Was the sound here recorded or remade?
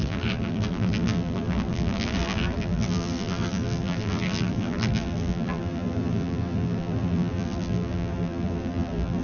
remade